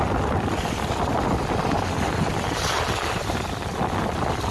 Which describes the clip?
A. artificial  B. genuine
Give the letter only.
B